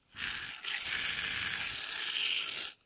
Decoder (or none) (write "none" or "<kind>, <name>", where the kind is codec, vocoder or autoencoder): none